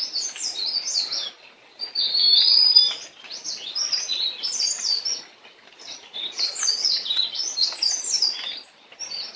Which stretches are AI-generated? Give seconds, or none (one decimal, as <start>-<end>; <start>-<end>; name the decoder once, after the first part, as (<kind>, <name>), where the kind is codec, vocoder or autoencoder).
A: none